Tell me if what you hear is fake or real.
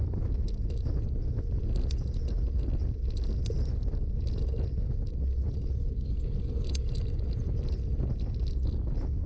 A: real